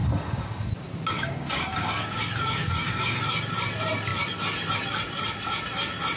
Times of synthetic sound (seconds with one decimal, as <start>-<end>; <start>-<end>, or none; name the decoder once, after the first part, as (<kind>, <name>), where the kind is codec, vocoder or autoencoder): 0.0-0.7 (codec, DAC); 1.1-3.2